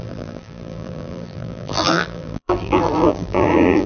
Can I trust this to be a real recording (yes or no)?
no